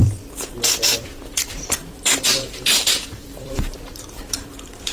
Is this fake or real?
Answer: fake